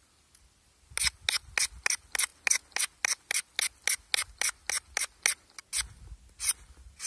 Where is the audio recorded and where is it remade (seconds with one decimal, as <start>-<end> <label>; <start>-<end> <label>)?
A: 0.0-7.1 recorded